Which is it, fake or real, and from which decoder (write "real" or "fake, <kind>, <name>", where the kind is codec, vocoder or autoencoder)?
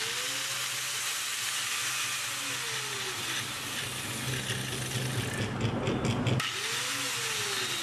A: real